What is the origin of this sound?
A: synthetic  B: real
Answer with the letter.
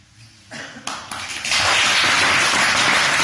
B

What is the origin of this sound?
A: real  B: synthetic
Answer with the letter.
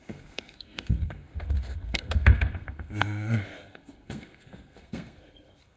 B